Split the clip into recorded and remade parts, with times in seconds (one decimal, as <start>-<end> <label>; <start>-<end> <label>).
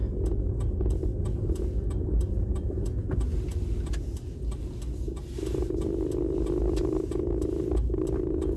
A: 0.0-8.6 recorded